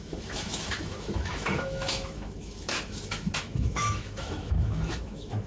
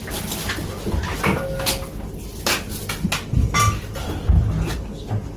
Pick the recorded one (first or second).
second